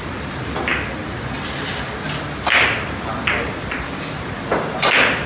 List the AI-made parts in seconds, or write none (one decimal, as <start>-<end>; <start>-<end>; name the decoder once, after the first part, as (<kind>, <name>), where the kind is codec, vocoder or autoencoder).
0.0-0.7 (vocoder, BigVGAN v2); 3.9-5.3